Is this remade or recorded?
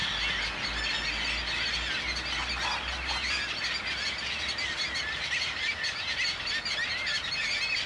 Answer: recorded